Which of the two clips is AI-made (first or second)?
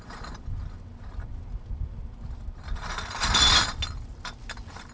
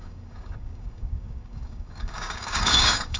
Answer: second